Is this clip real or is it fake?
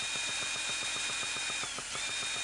real